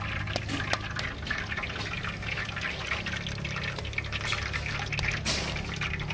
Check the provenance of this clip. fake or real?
real